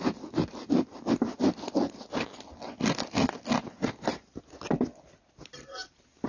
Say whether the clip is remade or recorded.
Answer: recorded